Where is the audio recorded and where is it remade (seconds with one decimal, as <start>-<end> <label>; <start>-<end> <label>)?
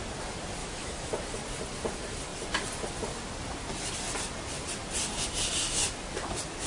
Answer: 0.0-0.6 recorded; 0.6-1.1 remade; 1.1-6.7 recorded